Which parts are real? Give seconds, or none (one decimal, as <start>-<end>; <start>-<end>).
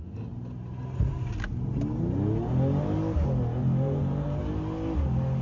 0.0-3.6; 4.4-5.4